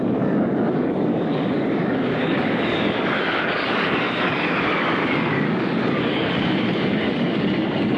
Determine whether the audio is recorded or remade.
remade